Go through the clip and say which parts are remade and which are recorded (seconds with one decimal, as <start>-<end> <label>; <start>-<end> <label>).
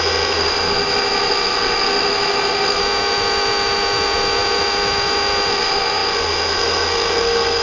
0.0-2.8 remade; 2.8-5.5 recorded; 5.5-7.6 remade